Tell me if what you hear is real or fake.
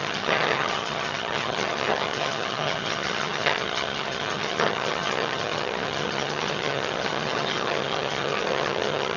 fake